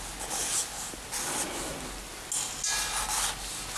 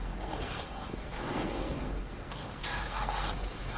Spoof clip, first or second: second